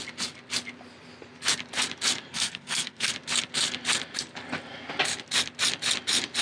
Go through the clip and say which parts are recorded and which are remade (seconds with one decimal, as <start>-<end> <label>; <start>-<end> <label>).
0.0-2.3 recorded; 2.3-3.1 remade; 3.1-6.4 recorded